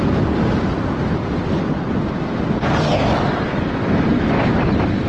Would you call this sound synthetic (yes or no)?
no